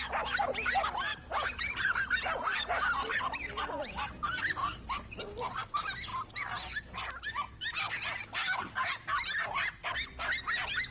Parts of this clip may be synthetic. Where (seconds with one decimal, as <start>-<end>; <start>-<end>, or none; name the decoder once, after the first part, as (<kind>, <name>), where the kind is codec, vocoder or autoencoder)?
1.1-2.7 (vocoder, BigVGAN v2); 4.6-5.2